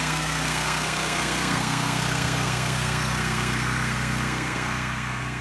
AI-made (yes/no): yes